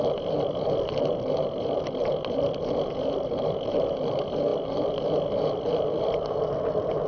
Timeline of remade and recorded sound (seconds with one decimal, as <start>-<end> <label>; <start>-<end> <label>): 0.0-7.1 recorded